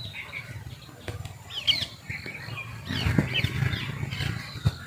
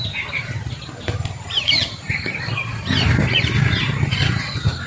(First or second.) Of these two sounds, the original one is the first